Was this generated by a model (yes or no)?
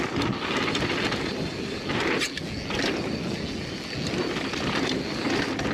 no